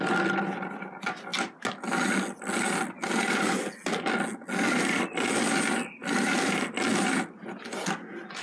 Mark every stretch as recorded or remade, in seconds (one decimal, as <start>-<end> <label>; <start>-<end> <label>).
0.0-8.4 recorded